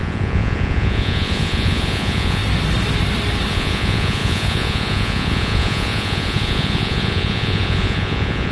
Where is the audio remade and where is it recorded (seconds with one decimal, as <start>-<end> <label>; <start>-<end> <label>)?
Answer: 0.0-2.4 remade; 2.4-3.5 recorded; 3.5-8.5 remade